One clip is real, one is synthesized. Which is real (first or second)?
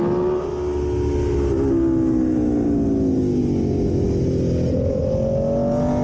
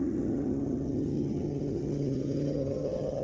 first